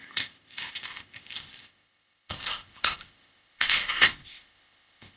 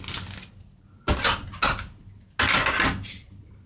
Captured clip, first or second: second